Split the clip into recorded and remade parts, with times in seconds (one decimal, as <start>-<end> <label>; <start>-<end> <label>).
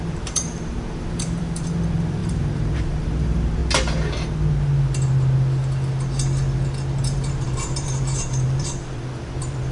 0.0-3.6 remade; 3.6-7.0 recorded; 7.0-9.7 remade